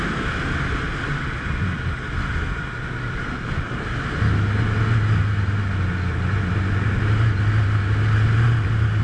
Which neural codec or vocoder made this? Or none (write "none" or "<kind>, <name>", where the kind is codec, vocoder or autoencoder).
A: none